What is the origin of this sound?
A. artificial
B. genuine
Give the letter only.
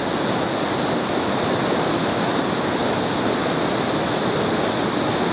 B